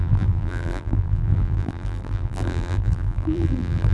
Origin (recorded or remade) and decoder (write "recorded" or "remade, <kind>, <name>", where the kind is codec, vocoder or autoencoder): remade, vocoder, BigVGAN v2